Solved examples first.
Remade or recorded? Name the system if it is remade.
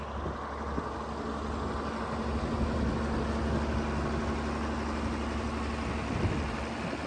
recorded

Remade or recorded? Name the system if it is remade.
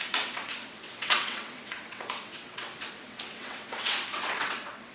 remade, vocoder, WaveNeXt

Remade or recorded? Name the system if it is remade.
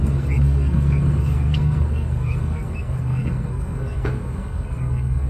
remade, codec, SNAC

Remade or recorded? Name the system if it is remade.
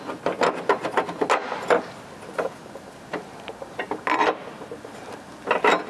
recorded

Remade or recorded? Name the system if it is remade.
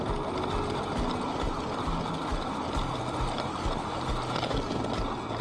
recorded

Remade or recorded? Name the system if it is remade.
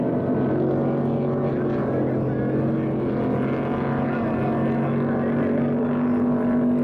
recorded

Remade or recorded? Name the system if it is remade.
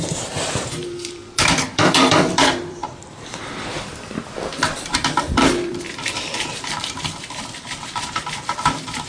remade, vocoder, BigVGAN v2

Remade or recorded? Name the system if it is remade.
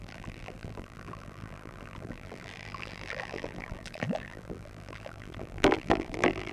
remade, vocoder, BigVGAN v2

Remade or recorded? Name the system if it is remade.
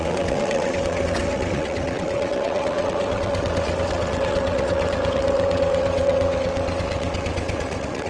remade, vocoder, WaveNeXt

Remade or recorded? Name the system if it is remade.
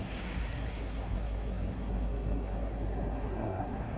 remade, codec, SNAC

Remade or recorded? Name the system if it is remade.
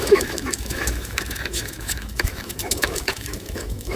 remade, autoencoder, DAC-VAE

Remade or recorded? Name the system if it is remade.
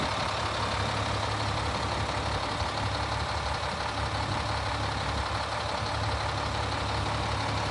recorded